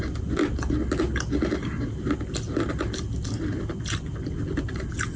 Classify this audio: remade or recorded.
recorded